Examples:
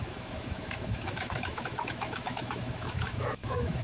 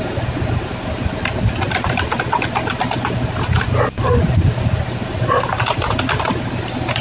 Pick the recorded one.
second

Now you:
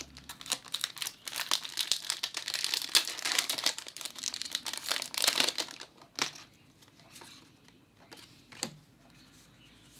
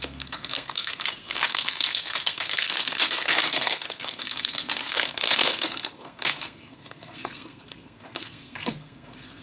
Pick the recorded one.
first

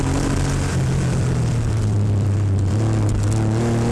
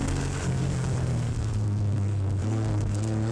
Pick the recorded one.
first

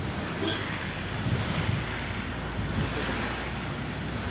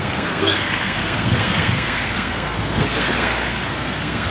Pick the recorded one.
first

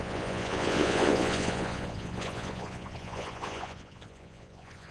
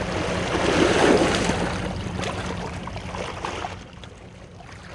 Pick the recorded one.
second